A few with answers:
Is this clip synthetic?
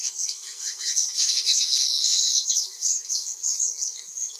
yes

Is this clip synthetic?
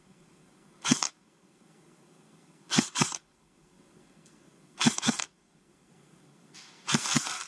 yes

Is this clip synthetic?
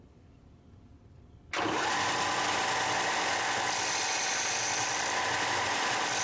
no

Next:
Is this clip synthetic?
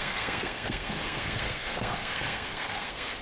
yes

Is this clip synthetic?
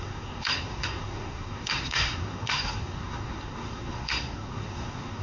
yes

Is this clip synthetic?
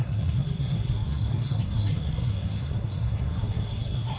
yes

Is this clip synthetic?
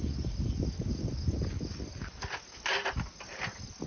no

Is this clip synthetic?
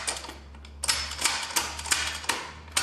no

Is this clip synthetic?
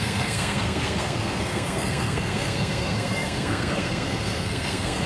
yes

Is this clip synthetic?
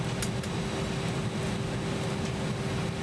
no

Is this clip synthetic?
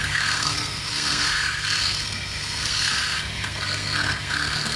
yes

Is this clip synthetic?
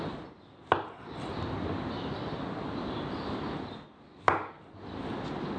no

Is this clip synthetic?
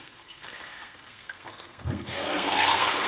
yes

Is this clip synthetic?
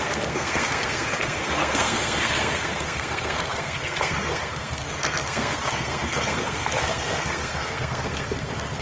yes